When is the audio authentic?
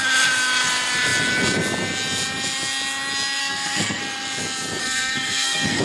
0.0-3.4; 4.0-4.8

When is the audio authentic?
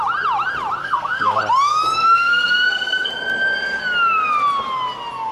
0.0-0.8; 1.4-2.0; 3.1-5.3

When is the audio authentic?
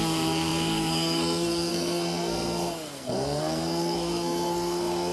none